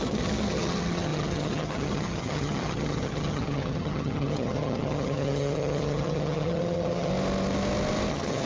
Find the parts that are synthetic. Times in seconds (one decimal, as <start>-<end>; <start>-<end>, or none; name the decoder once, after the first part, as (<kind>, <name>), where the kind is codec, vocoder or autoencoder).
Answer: 0.0-7.1 (vocoder, HiFi-GAN); 8.1-8.5